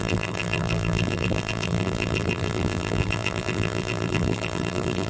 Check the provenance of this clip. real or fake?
fake